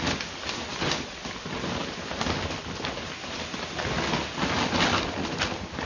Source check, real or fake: real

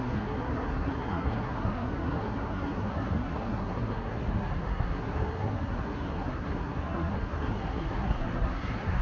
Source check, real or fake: fake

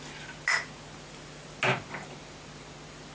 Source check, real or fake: real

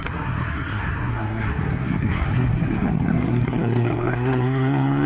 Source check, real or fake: fake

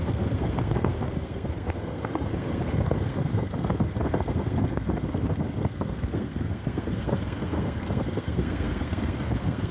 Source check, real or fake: fake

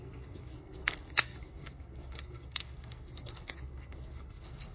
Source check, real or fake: fake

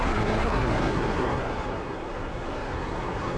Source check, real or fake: fake